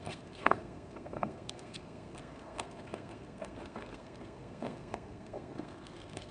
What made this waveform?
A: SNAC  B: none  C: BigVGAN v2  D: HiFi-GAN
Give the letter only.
A